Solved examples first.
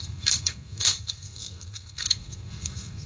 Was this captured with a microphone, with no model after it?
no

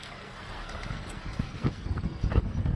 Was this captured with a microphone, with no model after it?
no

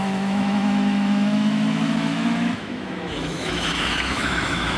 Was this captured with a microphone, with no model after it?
no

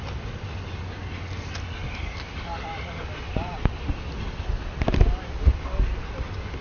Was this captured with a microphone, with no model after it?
yes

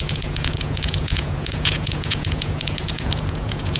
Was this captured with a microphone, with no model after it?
no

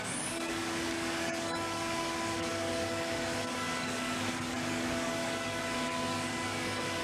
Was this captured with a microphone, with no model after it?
no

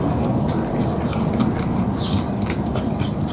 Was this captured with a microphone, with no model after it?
yes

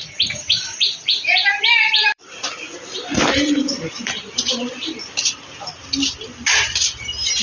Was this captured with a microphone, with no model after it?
no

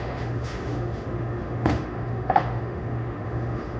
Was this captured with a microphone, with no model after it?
no